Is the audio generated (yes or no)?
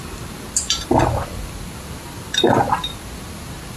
no